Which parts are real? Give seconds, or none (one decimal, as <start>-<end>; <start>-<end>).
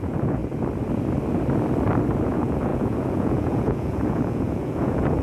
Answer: 0.4-2.2